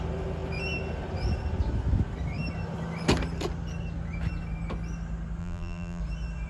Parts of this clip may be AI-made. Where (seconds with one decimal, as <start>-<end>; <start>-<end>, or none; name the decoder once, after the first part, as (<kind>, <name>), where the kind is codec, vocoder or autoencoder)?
5.4-6.0 (vocoder, BigVGAN v2)